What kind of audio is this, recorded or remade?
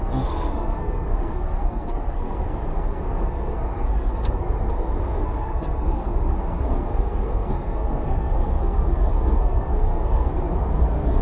remade